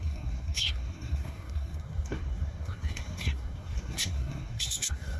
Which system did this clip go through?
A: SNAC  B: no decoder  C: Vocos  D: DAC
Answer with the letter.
A